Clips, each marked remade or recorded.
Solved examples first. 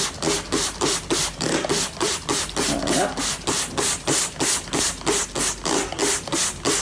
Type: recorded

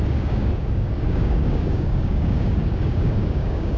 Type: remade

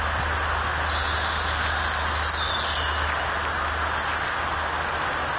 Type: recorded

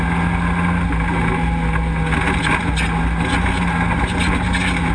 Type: recorded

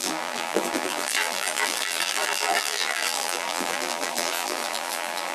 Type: remade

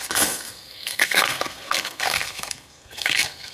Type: remade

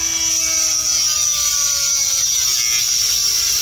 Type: recorded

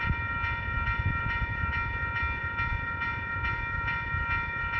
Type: remade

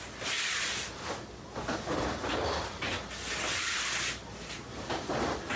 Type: recorded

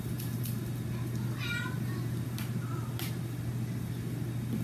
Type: recorded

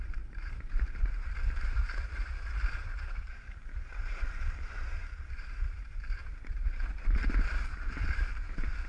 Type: remade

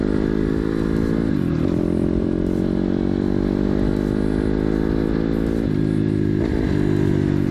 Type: recorded